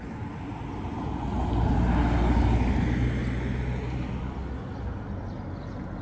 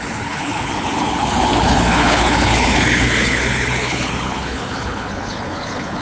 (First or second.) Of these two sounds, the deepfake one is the second